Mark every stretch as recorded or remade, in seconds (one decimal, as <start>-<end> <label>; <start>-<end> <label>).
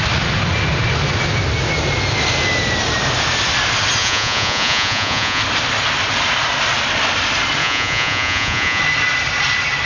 0.0-4.0 recorded; 4.0-5.4 remade; 5.4-7.6 recorded; 7.6-8.8 remade; 8.8-9.9 recorded